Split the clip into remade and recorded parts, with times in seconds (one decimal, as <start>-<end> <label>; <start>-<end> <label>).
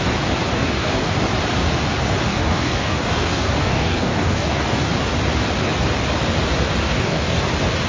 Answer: 0.0-0.5 recorded; 0.5-1.1 remade; 1.1-2.3 recorded; 2.3-4.8 remade; 4.8-6.8 recorded; 6.8-7.4 remade; 7.4-7.9 recorded